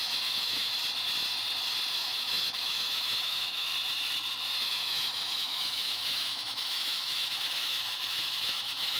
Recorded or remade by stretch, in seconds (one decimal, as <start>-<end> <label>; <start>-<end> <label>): 0.0-0.7 remade; 0.7-1.9 recorded; 1.9-3.7 remade; 3.7-4.6 recorded; 4.6-9.0 remade